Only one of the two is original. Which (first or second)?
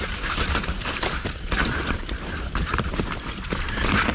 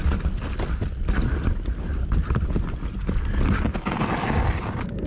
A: second